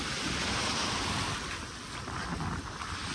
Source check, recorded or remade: recorded